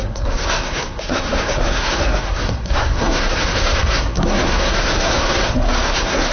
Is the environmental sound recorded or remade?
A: remade